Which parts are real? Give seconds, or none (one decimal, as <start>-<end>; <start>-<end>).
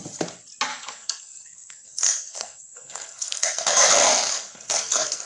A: 0.0-0.7; 3.9-4.3